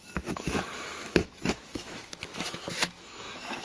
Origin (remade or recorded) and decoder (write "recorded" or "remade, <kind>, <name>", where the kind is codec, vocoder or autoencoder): remade, autoencoder, DAC-VAE